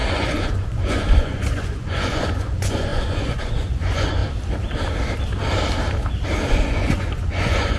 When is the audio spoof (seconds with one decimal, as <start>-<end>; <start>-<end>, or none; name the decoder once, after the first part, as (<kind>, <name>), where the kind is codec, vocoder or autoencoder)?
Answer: 0.0-4.2 (vocoder, Vocos); 6.5-7.8